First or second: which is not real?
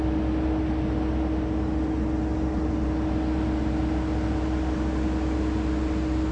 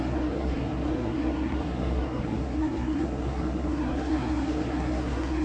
second